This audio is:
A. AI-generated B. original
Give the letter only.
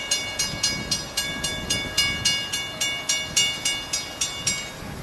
B